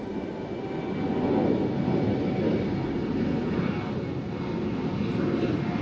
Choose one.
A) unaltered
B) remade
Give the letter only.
A